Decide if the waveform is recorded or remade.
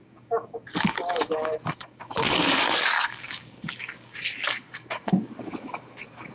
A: remade